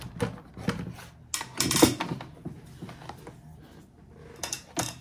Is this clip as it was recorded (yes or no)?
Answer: yes